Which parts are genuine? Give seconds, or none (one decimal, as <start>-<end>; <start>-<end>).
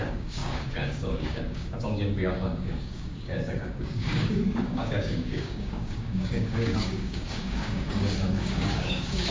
none